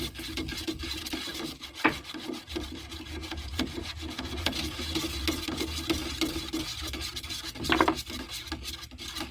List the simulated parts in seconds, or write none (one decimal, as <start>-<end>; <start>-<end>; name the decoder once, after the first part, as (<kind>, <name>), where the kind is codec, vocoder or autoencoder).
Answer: 3.2-5.0 (vocoder, Vocos)